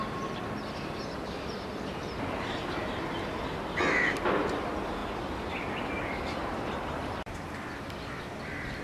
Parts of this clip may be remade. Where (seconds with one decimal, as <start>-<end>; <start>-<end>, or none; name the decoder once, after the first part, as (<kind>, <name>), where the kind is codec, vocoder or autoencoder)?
5.0-8.2 (vocoder, BigVGAN v2)